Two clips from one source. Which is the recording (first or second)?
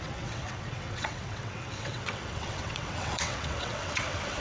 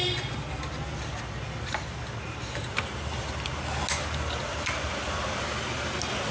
second